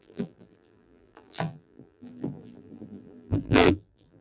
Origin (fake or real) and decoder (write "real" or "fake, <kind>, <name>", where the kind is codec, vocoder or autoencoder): fake, vocoder, BigVGAN v2